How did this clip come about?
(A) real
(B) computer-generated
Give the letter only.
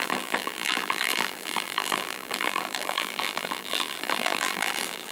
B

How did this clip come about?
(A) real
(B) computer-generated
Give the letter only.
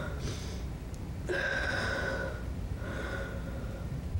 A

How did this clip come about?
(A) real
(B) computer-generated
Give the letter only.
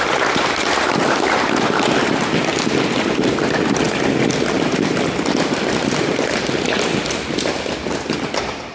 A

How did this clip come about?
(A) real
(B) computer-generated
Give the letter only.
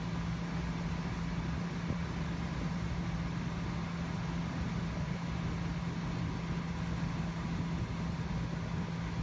A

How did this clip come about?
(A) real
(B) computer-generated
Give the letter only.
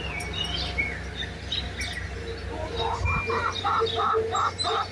A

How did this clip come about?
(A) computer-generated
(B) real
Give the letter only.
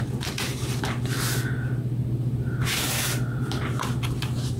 B